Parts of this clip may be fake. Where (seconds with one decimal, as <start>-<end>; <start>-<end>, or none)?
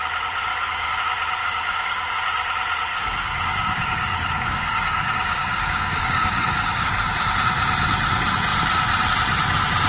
0.5-1.0; 1.4-2.1; 2.9-6.9